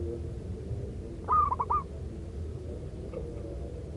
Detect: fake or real real